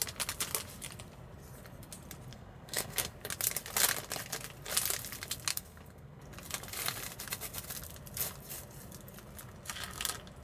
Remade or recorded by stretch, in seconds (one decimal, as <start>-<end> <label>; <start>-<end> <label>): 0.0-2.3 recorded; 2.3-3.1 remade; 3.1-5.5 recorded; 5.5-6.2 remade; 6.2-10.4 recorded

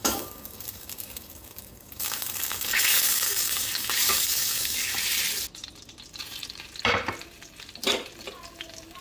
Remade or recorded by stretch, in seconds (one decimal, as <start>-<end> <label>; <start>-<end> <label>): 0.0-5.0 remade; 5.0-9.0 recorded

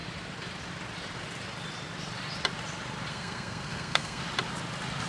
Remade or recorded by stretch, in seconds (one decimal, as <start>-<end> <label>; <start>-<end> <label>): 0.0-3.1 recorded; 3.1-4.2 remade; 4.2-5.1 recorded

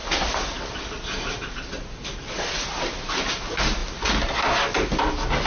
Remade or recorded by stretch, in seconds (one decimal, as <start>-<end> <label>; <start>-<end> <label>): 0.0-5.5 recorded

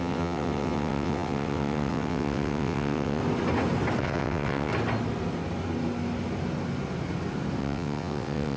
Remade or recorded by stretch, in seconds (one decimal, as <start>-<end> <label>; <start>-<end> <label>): 0.0-3.2 remade; 3.2-4.0 recorded; 4.0-4.7 remade; 4.7-7.6 recorded; 7.6-8.6 remade

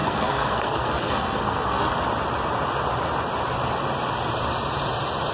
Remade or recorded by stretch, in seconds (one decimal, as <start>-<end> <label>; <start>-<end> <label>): 0.0-1.9 remade; 1.9-5.3 recorded